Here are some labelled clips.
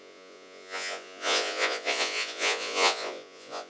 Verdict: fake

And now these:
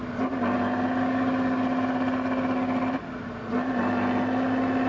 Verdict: real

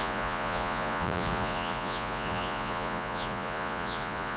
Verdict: fake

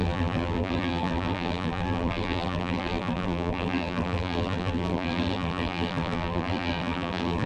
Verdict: fake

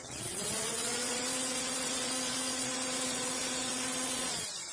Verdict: fake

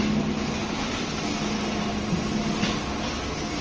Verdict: real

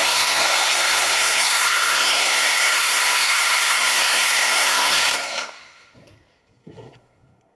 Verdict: fake